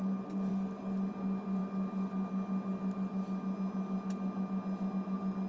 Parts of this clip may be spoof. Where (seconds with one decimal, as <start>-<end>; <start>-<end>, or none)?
none